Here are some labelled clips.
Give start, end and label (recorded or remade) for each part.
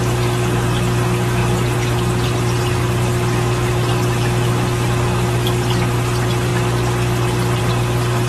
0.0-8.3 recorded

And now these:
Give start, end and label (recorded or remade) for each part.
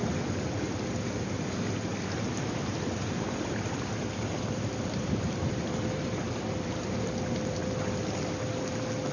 0.0-1.9 recorded; 1.9-6.7 remade; 6.7-9.1 recorded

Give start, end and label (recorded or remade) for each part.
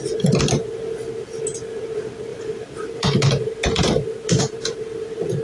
0.0-2.3 recorded; 2.3-4.4 remade; 4.4-5.4 recorded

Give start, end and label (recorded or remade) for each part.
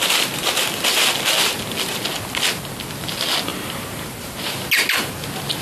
0.0-3.5 recorded; 3.5-4.7 remade; 4.7-5.6 recorded